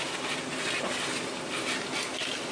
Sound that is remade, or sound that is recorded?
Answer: recorded